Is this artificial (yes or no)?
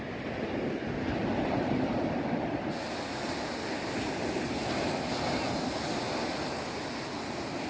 no